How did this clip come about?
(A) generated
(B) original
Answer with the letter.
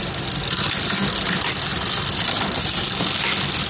B